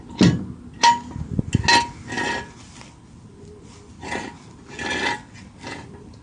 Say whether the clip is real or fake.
real